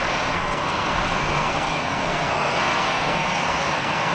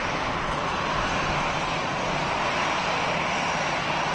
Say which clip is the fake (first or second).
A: first